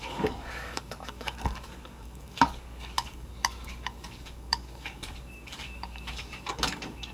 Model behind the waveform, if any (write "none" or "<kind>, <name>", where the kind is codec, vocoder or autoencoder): codec, DAC